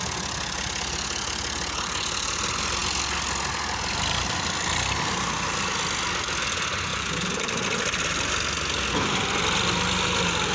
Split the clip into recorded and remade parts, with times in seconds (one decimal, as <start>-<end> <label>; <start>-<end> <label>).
0.0-6.9 recorded; 6.9-7.6 remade; 7.6-10.5 recorded